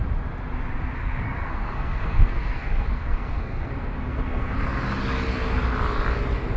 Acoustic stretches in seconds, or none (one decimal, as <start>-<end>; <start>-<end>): 0.0-1.0; 4.6-6.6